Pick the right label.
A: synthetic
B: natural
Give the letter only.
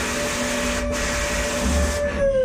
B